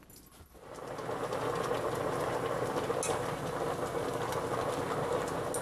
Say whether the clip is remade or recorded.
recorded